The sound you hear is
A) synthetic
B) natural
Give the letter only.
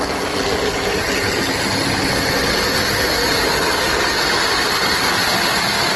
B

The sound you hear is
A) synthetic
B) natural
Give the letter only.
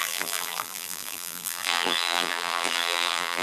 A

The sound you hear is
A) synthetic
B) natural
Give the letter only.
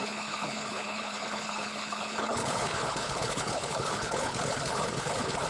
A